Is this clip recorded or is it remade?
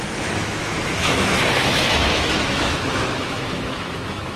remade